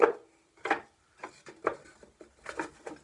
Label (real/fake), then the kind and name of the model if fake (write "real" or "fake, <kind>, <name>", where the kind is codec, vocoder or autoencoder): real